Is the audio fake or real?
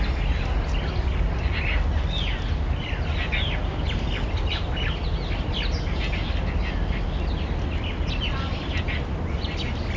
real